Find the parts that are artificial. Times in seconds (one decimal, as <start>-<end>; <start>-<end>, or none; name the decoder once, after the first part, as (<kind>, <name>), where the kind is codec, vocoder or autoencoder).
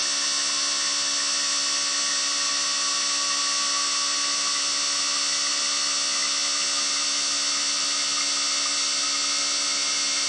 none